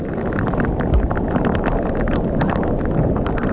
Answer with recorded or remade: recorded